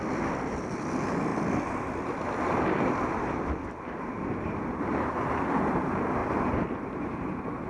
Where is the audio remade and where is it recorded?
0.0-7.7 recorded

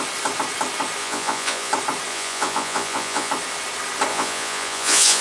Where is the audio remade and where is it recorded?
0.0-1.0 recorded; 1.0-1.7 remade; 1.7-2.1 recorded; 2.1-3.3 remade; 3.3-4.1 recorded; 4.1-5.2 remade

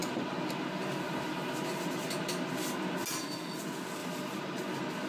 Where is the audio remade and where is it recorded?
0.0-4.0 recorded; 4.0-4.6 remade; 4.6-5.1 recorded